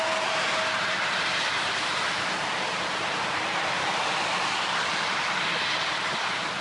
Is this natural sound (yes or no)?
yes